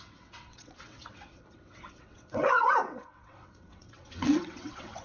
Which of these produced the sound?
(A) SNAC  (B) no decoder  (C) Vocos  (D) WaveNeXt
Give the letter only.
D